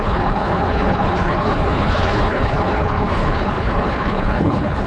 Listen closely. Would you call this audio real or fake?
fake